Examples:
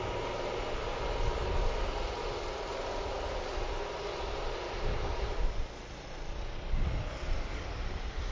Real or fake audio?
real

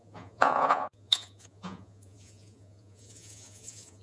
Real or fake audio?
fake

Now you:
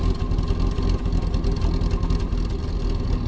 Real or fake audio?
real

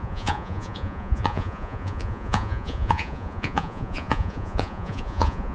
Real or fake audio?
fake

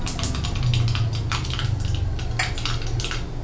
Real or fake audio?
real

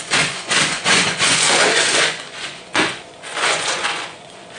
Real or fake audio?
fake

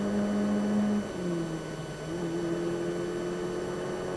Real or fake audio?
real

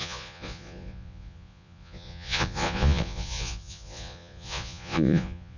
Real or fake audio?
fake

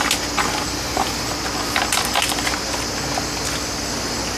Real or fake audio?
real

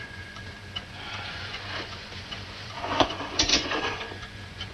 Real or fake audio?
fake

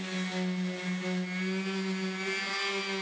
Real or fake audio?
real